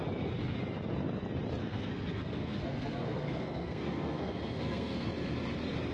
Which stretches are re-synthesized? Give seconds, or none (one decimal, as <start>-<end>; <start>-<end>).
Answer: 1.6-5.1